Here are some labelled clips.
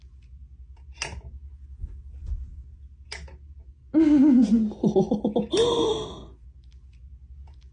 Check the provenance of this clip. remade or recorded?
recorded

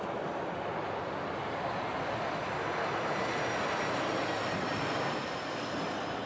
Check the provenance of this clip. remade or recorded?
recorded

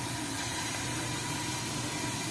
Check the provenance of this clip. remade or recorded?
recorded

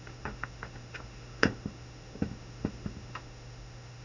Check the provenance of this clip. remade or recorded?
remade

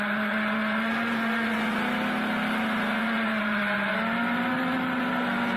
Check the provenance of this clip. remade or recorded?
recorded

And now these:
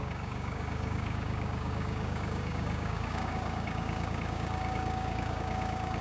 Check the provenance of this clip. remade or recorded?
remade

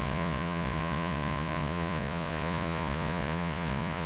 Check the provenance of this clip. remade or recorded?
remade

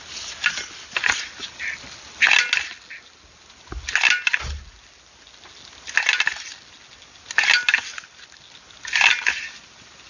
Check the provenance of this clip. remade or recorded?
recorded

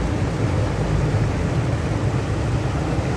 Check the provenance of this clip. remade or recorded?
recorded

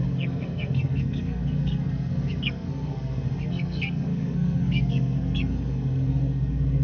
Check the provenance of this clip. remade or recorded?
remade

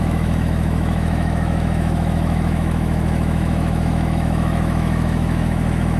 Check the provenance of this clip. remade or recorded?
remade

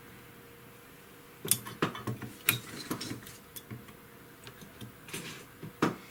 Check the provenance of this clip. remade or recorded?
recorded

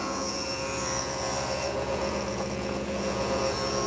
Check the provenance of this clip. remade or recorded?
remade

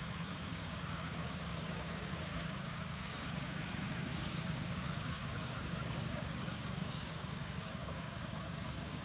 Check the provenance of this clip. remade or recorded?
remade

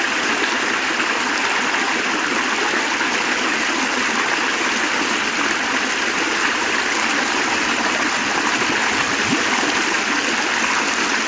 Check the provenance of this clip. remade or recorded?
recorded